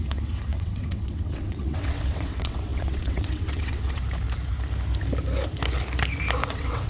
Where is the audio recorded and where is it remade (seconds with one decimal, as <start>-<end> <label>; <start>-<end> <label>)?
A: 0.0-4.0 remade; 4.0-6.5 recorded; 6.5-6.9 remade